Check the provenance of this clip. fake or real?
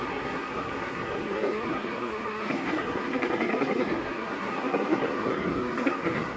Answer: fake